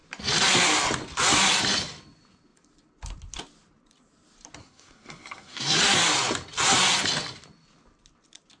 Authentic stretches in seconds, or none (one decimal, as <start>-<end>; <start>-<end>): 0.0-4.6; 5.8-8.6